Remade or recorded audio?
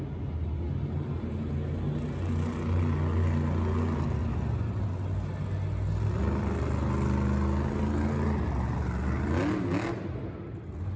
recorded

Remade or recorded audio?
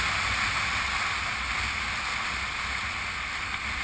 recorded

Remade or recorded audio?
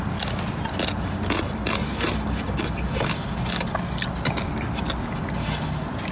recorded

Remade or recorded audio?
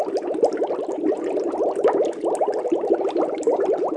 recorded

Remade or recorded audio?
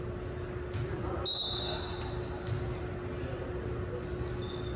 recorded